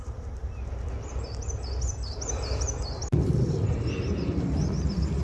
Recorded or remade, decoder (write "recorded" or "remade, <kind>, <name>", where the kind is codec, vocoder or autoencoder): recorded